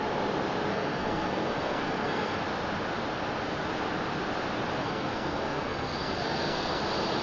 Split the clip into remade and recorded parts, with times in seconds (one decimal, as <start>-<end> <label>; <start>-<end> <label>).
0.0-0.7 recorded; 0.7-2.4 remade; 2.4-4.8 recorded; 4.8-6.8 remade; 6.8-7.2 recorded